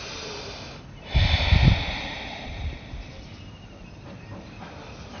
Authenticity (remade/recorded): recorded